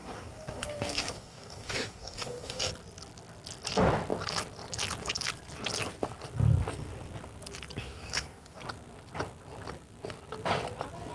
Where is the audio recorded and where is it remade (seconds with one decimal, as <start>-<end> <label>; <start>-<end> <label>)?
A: 0.0-2.7 remade; 2.7-7.8 recorded; 7.8-8.6 remade; 8.6-11.1 recorded